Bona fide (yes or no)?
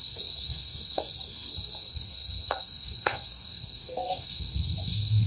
no